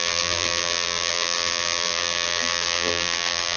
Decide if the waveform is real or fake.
fake